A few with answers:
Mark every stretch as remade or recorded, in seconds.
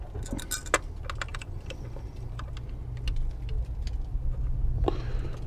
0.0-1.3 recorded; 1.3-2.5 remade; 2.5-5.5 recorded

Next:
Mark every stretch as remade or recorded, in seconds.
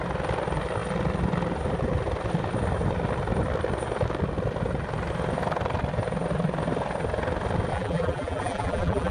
0.0-7.7 recorded; 7.7-9.1 remade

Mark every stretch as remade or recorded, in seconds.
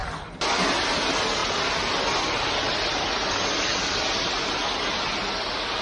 0.0-0.6 remade; 0.6-1.4 recorded; 1.4-2.0 remade; 2.0-5.8 recorded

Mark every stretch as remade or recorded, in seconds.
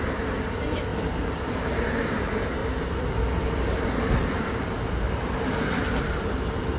0.0-0.9 recorded; 0.9-1.5 remade; 1.5-2.6 recorded; 2.6-6.0 remade; 6.0-6.8 recorded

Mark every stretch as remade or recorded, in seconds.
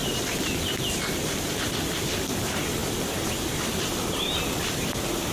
0.0-1.5 recorded; 1.5-5.3 remade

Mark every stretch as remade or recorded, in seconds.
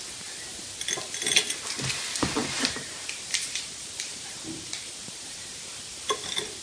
0.0-2.4 recorded; 2.4-6.1 remade; 6.1-6.6 recorded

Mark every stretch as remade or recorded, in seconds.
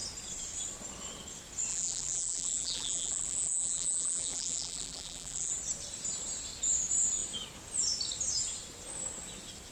0.0-1.7 recorded; 1.7-5.5 remade; 5.5-9.7 recorded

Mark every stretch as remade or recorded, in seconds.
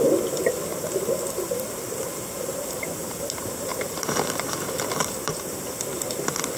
0.0-0.7 recorded; 0.7-1.2 remade; 1.2-3.0 recorded; 3.0-5.7 remade; 5.7-6.6 recorded